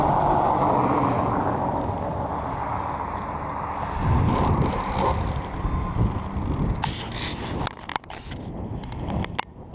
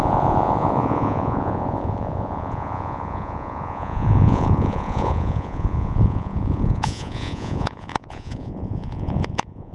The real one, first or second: first